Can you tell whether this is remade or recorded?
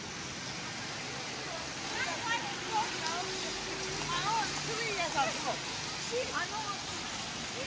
recorded